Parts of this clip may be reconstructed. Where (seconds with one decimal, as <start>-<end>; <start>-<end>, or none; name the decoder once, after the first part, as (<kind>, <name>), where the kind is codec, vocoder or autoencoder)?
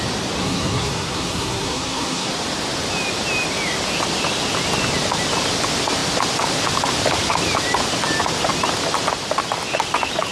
0.4-2.3 (codec, SNAC)